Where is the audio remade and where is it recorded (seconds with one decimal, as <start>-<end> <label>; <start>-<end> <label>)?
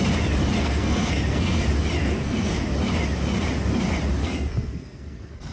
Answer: 0.0-0.6 recorded; 0.6-1.6 remade; 1.6-2.0 recorded; 2.0-2.6 remade; 2.6-4.2 recorded; 4.2-5.5 remade